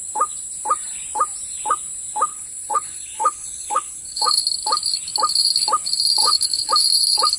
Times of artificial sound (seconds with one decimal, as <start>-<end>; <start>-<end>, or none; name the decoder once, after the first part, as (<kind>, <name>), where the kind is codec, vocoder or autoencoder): 2.3-4.4 (codec, HILCodec); 6.2-6.7